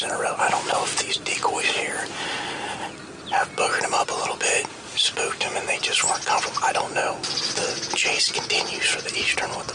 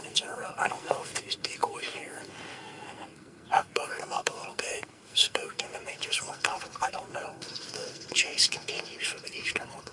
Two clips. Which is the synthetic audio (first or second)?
second